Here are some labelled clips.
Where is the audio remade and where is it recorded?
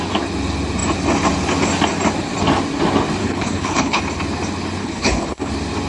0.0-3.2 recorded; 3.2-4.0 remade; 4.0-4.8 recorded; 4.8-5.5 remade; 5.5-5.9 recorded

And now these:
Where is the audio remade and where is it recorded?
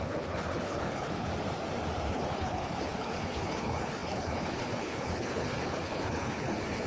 0.0-1.3 remade; 1.3-2.1 recorded; 2.1-6.9 remade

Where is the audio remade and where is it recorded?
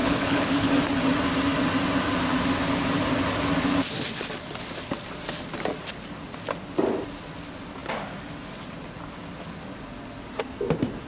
0.0-0.7 remade; 0.7-11.1 recorded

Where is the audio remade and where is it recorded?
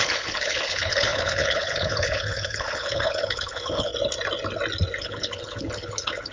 0.0-3.9 remade; 3.9-5.0 recorded; 5.0-6.3 remade